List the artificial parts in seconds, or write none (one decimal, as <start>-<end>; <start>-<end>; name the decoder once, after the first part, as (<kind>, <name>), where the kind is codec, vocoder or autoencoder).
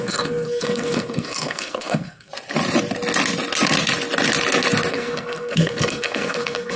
0.0-2.3 (codec, SNAC); 4.9-6.8